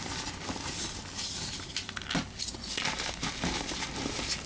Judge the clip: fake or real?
real